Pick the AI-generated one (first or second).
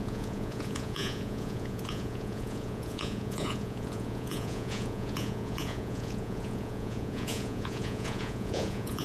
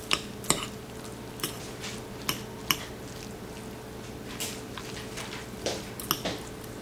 first